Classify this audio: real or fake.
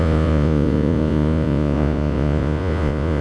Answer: fake